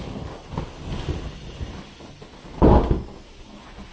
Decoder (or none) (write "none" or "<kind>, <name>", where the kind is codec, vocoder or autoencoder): none